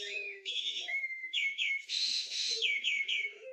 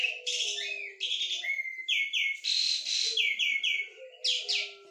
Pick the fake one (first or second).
first